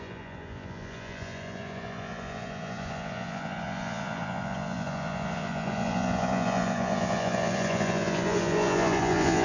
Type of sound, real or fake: fake